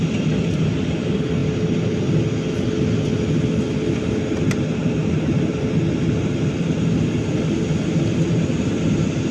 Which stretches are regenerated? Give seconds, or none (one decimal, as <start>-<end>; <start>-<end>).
none